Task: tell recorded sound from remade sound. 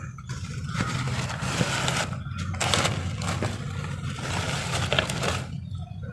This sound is recorded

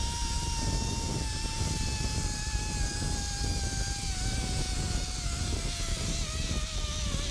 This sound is recorded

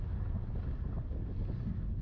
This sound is recorded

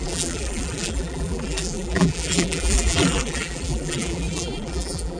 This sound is remade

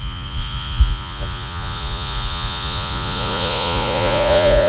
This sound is remade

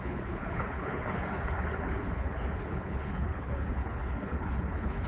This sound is remade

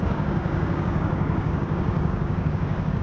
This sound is remade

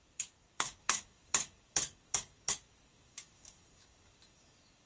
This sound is remade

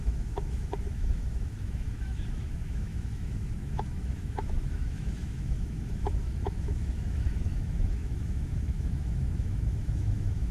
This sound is remade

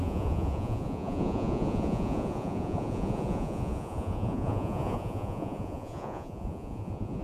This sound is remade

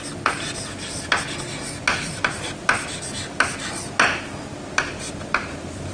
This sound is recorded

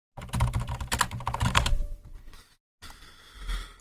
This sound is recorded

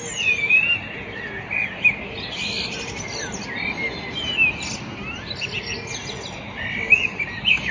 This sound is recorded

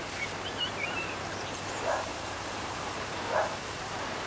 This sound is remade